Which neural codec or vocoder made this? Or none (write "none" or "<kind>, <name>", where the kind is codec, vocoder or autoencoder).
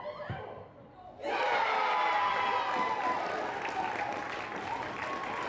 none